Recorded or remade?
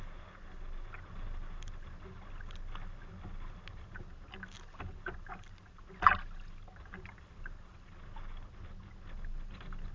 recorded